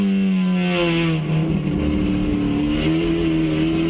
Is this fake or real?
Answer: real